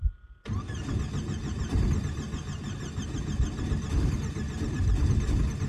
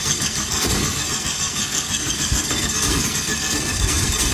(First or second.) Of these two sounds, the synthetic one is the second